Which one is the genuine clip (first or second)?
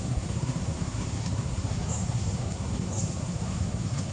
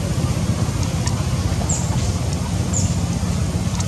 second